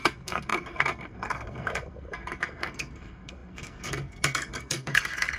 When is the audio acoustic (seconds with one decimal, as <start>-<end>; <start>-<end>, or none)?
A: none